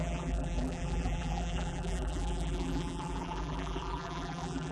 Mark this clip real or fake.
fake